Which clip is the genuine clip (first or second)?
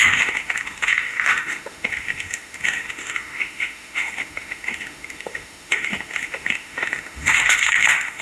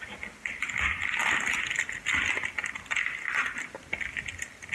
second